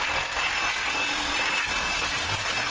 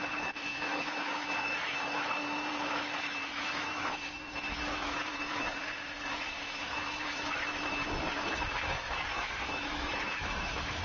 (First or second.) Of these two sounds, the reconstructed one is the second